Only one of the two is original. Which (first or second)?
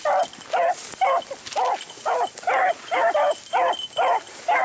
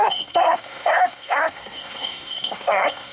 first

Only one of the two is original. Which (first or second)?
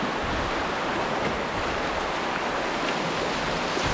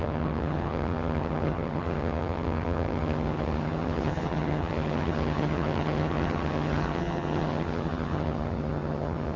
first